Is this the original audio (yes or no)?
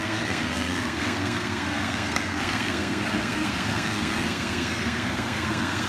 no